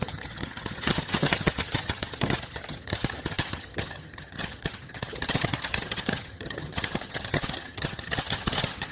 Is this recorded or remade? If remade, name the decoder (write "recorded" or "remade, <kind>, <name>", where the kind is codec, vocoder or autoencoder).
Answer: remade, vocoder, HiFi-GAN